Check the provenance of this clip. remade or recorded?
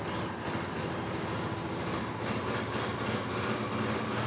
recorded